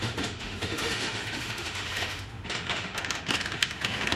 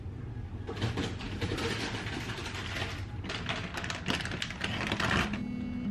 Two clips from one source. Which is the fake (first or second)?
first